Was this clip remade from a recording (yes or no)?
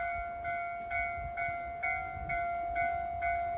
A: no